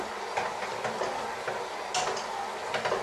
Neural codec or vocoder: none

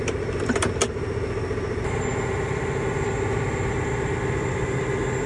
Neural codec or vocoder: none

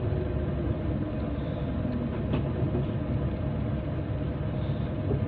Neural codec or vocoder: none